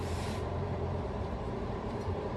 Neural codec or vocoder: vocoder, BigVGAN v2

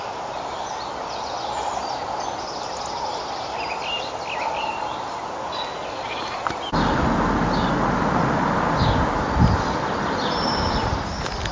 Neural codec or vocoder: none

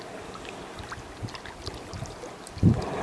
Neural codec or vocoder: none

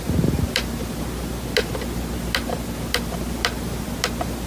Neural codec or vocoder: none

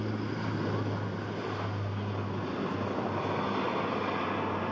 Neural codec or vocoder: none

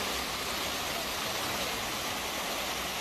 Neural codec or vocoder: none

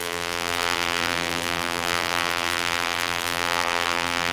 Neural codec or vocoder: vocoder, BigVGAN v2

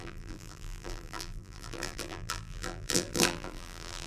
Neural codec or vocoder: vocoder, BigVGAN v2